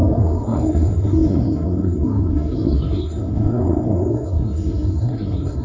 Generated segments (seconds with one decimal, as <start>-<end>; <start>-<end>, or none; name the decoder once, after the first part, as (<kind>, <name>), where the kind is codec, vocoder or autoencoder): 0.0-5.6 (codec, SNAC)